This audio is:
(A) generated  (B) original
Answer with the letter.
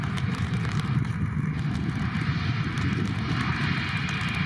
A